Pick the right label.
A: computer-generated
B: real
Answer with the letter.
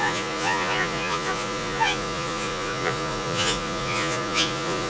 A